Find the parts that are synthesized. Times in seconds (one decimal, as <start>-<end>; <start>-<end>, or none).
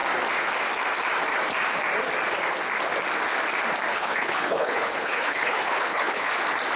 3.9-6.3